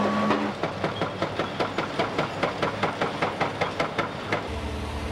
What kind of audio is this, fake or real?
real